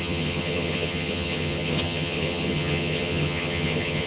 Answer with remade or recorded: remade